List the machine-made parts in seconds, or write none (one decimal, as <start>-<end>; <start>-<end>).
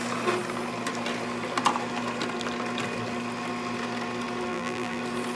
4.5-5.0